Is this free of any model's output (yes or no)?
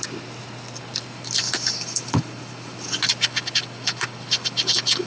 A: yes